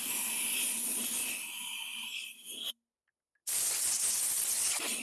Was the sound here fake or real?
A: real